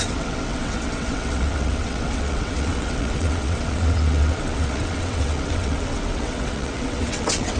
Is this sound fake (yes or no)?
yes